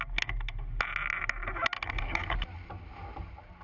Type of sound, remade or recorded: recorded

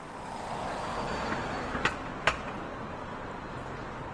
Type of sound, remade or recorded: recorded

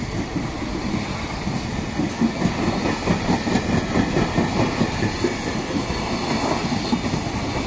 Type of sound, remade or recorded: recorded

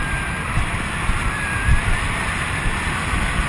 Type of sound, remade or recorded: recorded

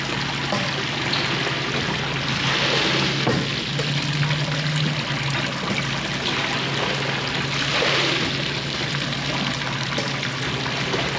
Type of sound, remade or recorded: recorded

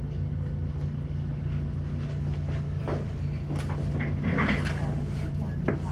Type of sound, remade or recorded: recorded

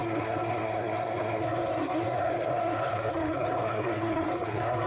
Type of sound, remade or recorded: remade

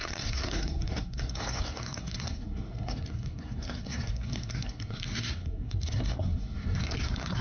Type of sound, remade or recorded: remade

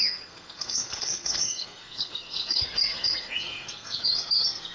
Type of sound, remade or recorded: remade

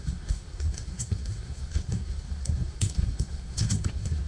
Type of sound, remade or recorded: remade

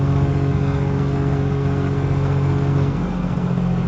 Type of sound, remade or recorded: remade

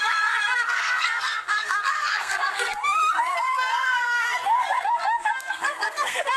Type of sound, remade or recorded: remade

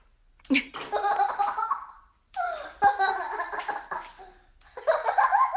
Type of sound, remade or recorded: recorded